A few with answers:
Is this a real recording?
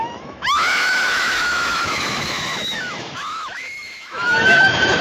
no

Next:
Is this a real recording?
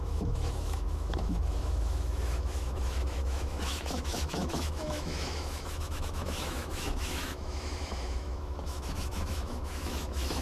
no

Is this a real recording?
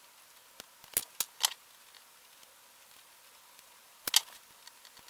yes